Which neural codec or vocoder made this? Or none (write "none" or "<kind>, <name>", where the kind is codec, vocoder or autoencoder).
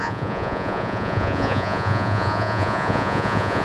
vocoder, Vocos